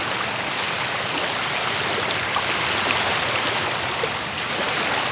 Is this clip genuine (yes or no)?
yes